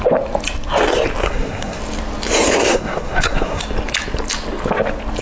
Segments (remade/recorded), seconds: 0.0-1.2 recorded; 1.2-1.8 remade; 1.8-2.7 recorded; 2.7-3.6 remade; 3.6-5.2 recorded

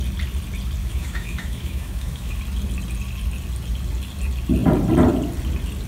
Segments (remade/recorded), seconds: 0.0-0.8 recorded; 0.8-2.4 remade; 2.4-5.9 recorded

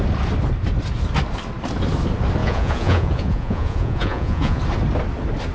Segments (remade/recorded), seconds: 0.0-2.4 recorded; 2.4-4.6 remade; 4.6-5.5 recorded